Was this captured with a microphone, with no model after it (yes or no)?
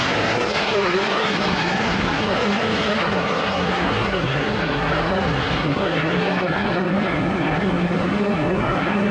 no